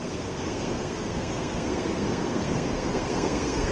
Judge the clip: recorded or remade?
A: remade